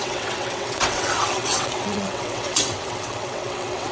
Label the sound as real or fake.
fake